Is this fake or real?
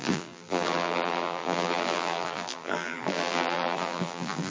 fake